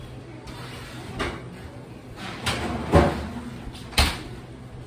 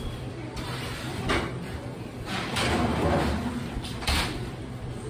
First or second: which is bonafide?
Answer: first